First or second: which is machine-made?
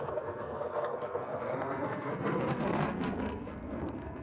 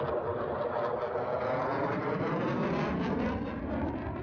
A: first